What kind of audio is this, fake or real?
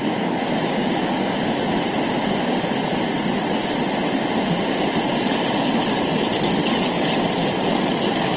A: fake